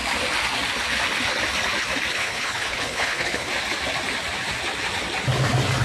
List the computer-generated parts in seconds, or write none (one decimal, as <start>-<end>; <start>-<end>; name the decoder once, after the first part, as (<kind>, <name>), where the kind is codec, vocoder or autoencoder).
2.1-3.5 (codec, HILCodec)